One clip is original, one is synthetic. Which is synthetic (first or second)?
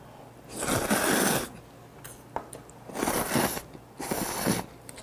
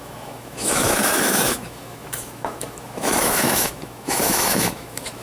second